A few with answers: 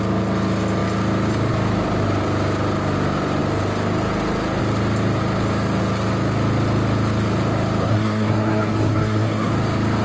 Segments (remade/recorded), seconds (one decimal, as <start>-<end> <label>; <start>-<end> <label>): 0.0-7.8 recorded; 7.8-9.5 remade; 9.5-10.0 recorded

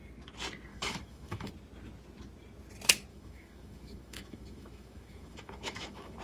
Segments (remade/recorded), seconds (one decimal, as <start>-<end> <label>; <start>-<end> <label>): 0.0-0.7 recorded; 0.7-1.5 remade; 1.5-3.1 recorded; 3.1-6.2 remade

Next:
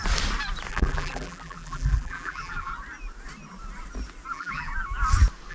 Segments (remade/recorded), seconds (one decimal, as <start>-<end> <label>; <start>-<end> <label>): 0.0-0.7 recorded; 0.7-2.7 remade; 2.7-4.3 recorded; 4.3-4.7 remade; 4.7-5.5 recorded

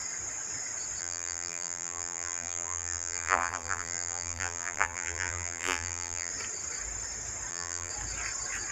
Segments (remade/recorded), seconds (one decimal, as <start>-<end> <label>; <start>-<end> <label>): 0.0-1.0 recorded; 1.0-6.3 remade; 6.3-7.5 recorded; 7.5-7.9 remade; 7.9-8.7 recorded

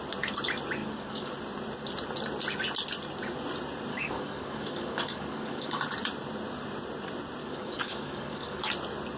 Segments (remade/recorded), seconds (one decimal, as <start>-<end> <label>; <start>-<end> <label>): 0.0-0.8 recorded; 0.8-1.3 remade; 1.3-3.9 recorded; 3.9-5.8 remade; 5.8-7.4 recorded; 7.4-8.7 remade; 8.7-9.2 recorded

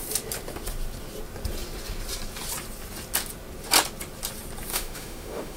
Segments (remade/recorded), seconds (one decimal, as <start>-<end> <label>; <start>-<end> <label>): 0.0-4.7 recorded; 4.7-5.6 remade

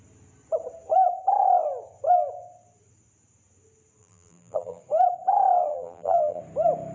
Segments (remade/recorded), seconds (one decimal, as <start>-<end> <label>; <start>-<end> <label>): 0.0-4.0 recorded; 4.0-4.8 remade; 4.8-5.7 recorded; 5.7-6.4 remade; 6.4-6.9 recorded